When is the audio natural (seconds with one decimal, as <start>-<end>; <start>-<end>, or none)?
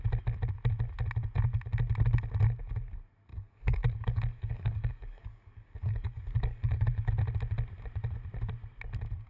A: 0.0-3.3; 7.1-9.3